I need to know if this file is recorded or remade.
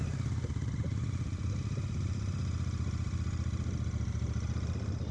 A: remade